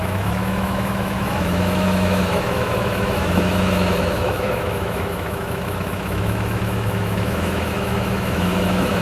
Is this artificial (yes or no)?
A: yes